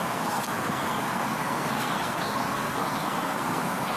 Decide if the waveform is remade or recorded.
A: remade